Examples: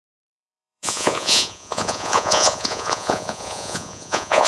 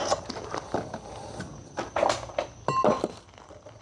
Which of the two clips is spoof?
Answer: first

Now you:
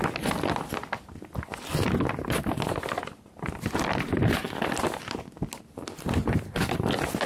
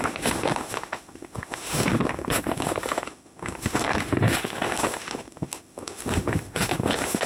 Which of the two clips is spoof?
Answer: second